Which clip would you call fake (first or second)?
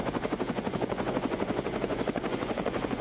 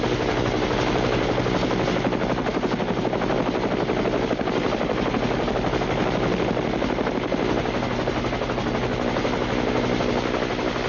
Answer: first